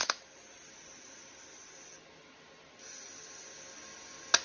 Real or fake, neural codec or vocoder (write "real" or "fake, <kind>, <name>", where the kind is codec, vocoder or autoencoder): real